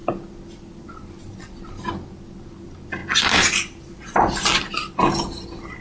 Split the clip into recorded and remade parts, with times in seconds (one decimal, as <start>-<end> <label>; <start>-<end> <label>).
0.0-5.8 recorded